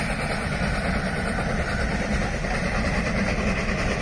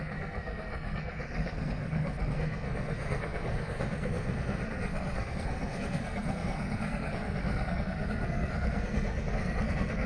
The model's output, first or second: second